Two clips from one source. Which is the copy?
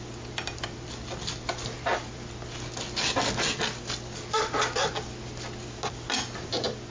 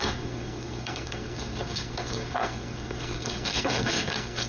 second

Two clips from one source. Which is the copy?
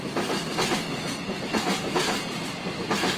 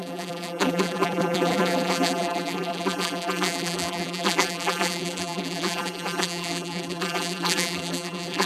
second